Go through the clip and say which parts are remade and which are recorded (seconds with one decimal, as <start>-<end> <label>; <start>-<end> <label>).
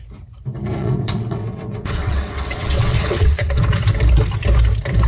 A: 0.0-0.8 recorded; 0.8-3.6 remade; 3.6-5.1 recorded